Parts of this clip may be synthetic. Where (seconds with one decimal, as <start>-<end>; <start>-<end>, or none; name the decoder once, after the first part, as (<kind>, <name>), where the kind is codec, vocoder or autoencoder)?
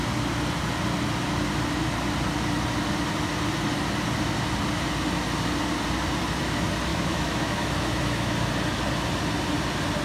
6.9-8.3 (autoencoder, DAC-VAE)